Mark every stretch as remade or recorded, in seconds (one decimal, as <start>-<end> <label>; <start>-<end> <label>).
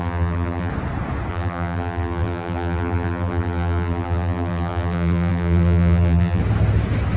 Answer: 0.0-0.7 remade; 0.7-1.3 recorded; 1.3-6.4 remade; 6.4-7.2 recorded